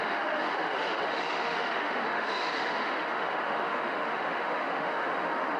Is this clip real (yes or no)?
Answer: no